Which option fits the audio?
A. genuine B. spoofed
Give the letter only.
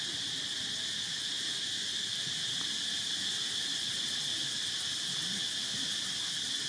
A